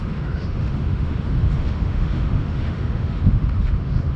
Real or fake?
fake